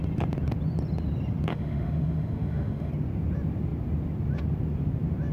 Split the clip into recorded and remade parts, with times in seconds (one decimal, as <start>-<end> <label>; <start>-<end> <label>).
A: 0.0-1.5 recorded; 1.5-2.9 remade; 2.9-5.3 recorded